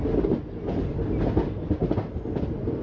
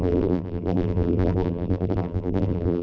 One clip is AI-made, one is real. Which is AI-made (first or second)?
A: second